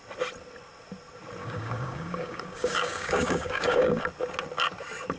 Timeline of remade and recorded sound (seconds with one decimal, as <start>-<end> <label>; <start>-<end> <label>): 0.0-1.4 recorded; 1.4-4.0 remade; 4.0-5.2 recorded